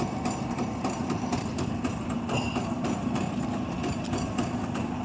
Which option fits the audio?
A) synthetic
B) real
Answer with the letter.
A